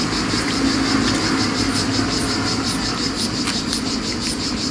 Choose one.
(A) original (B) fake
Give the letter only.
A